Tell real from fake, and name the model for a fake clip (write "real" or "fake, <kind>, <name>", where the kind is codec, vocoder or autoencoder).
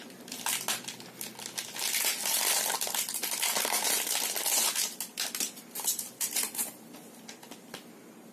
real